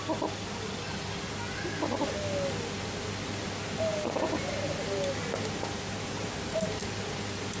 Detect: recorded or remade recorded